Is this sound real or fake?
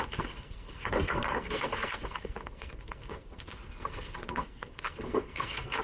fake